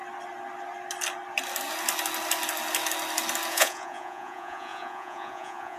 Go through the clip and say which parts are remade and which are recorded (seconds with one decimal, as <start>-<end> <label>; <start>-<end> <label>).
0.0-3.5 recorded; 3.5-5.8 remade